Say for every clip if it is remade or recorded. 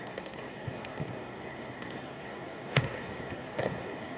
remade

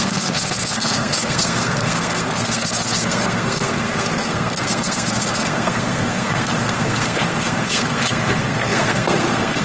remade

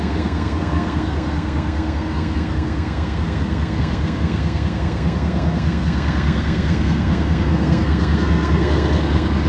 remade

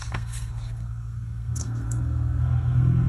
remade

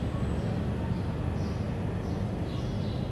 recorded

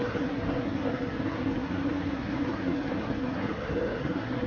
remade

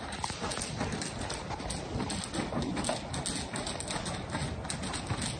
recorded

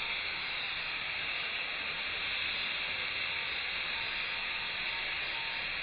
recorded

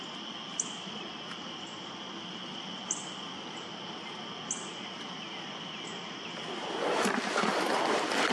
recorded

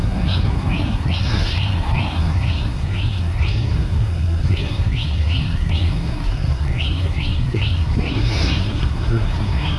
remade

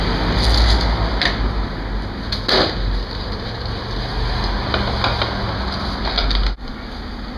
recorded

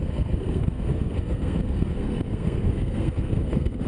remade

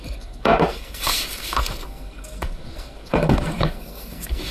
remade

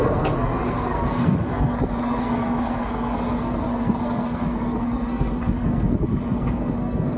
remade